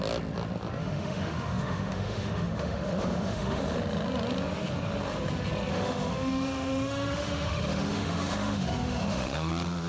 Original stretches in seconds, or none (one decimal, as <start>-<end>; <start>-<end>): 0.0-0.8; 3.6-5.7; 9.5-9.9